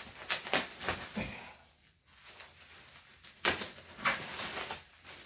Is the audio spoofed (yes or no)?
no